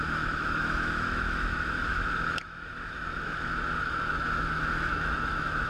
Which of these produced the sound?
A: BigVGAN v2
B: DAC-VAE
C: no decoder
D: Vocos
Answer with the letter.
B